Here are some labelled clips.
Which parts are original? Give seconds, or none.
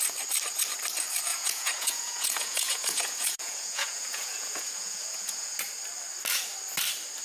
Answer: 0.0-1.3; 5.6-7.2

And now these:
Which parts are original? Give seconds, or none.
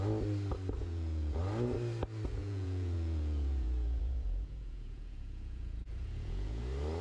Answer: 0.0-0.8; 1.4-2.4; 6.6-7.0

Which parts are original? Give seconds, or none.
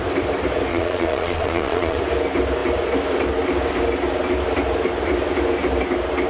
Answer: 0.0-0.7; 2.0-6.3